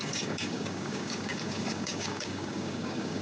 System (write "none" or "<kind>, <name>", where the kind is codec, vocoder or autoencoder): codec, DAC